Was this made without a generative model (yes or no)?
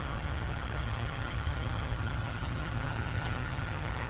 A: no